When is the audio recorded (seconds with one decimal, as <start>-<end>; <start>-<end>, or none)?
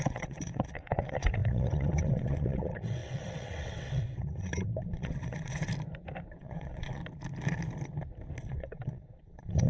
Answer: 5.7-6.4; 7.0-8.4